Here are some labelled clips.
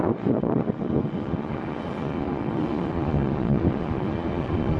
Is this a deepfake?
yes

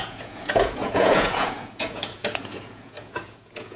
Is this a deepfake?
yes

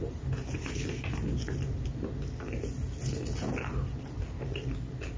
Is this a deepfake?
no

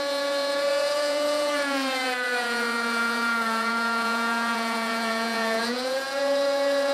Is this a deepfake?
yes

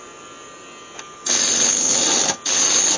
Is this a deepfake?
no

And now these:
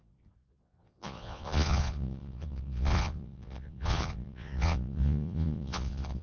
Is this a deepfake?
yes